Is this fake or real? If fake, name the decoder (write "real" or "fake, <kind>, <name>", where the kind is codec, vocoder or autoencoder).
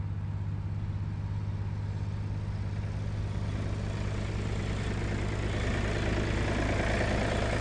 real